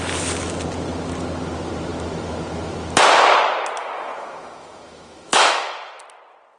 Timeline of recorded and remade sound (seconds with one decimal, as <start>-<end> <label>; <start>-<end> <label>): 0.0-3.8 recorded; 3.8-6.0 remade; 6.0-6.6 recorded